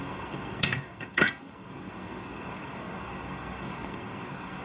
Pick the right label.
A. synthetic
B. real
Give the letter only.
A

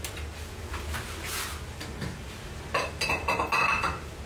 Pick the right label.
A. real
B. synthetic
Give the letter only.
A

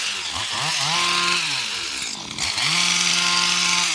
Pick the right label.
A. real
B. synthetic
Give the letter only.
A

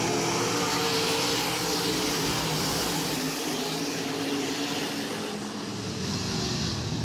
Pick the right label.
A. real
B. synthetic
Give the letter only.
A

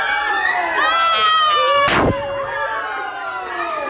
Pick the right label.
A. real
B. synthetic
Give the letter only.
A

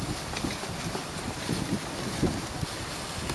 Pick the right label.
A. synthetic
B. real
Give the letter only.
B